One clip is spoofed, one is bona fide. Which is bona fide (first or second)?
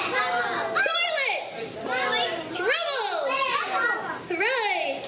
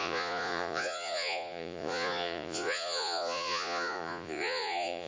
first